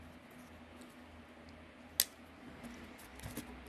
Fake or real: real